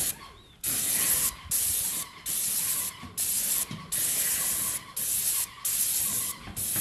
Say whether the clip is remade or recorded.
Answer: recorded